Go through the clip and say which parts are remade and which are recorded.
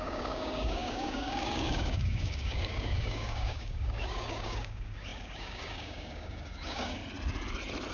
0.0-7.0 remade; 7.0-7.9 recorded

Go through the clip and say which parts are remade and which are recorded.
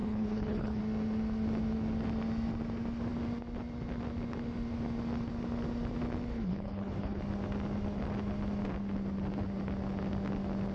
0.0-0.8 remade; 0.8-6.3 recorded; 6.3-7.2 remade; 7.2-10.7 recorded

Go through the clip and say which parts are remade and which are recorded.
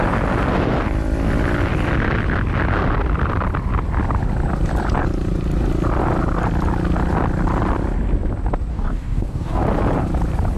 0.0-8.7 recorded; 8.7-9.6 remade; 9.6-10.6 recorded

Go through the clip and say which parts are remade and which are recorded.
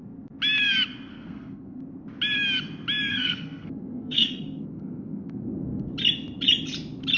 0.0-1.1 recorded; 1.1-1.8 remade; 1.8-3.1 recorded; 3.1-5.9 remade; 5.9-7.2 recorded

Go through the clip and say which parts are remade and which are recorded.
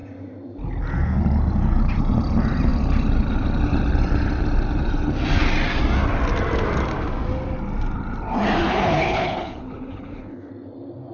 0.0-8.6 recorded; 8.6-10.5 remade; 10.5-11.1 recorded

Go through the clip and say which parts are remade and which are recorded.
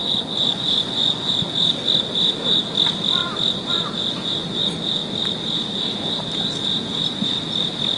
0.0-1.3 remade; 1.3-8.0 recorded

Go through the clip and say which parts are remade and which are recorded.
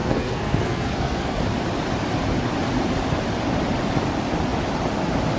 0.0-1.4 remade; 1.4-5.4 recorded